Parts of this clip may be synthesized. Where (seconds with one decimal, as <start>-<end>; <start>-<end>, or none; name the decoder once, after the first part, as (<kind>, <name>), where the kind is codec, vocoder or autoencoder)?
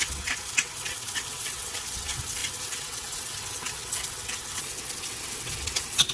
0.0-6.1 (vocoder, WaveNeXt)